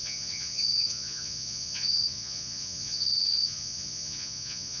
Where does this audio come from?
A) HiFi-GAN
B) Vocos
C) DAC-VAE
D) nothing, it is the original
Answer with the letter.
B